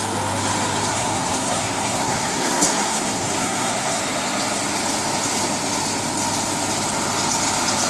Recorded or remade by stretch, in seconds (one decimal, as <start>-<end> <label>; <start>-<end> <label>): 0.0-0.9 recorded; 0.9-4.0 remade; 4.0-7.9 recorded